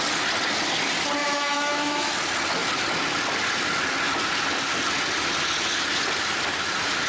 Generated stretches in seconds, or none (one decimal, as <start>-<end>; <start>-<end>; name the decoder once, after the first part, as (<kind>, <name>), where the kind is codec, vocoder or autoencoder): 1.2-2.1 (autoencoder, DAC-VAE)